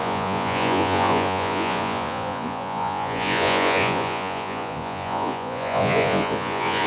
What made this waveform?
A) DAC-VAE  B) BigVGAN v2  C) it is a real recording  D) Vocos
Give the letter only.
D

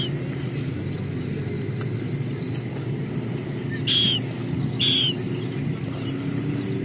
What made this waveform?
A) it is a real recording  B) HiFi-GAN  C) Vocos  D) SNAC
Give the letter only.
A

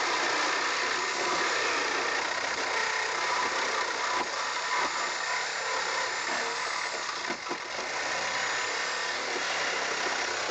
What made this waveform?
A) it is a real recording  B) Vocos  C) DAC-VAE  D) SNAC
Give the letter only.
A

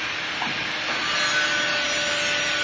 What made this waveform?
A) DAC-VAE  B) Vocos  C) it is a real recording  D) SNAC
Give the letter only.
C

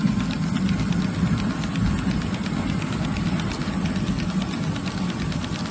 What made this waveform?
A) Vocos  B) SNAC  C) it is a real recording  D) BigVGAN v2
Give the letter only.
C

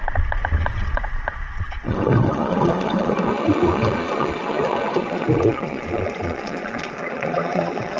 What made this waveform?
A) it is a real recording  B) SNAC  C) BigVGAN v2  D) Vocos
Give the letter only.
D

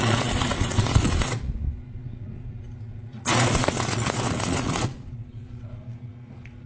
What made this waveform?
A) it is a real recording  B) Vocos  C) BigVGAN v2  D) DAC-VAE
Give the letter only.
B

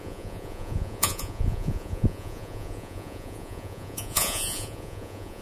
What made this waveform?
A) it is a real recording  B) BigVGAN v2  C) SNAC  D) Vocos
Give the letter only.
D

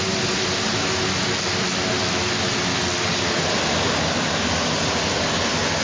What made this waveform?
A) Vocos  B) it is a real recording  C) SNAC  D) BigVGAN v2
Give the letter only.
B